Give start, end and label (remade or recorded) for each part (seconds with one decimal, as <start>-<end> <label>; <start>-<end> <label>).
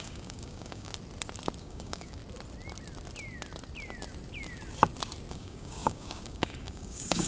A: 0.0-0.9 remade; 0.9-1.6 recorded; 1.6-2.2 remade; 2.2-5.3 recorded; 5.3-7.3 remade